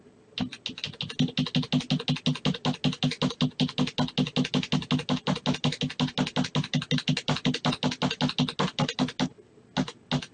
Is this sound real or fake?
real